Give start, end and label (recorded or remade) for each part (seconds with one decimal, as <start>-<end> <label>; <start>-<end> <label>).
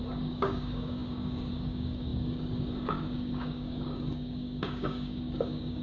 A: 0.0-5.8 remade